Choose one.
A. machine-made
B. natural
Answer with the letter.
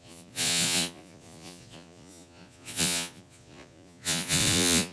A